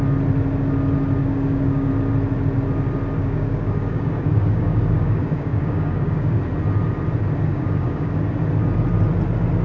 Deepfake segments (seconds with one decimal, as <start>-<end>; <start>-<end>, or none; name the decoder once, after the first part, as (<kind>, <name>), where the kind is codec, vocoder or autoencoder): 1.2-1.9 (codec, DAC); 3.2-6.4; 7.5-8.2